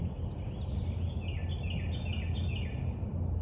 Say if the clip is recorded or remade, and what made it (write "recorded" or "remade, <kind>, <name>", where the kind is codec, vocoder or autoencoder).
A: recorded